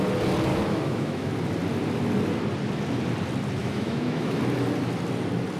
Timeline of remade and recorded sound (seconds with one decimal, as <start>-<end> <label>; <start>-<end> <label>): 0.0-0.5 recorded; 0.5-1.3 remade; 1.3-3.6 recorded; 3.6-4.4 remade; 4.4-5.6 recorded